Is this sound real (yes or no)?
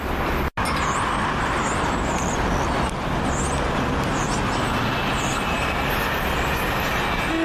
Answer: yes